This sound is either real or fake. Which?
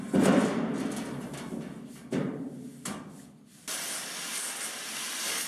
real